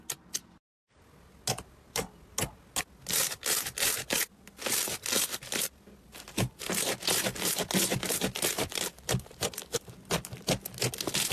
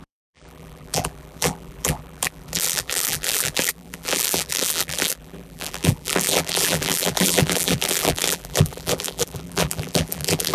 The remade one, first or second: second